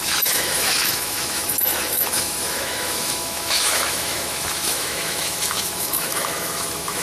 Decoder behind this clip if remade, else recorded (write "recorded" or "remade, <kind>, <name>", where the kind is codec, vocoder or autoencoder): remade, autoencoder, DAC-VAE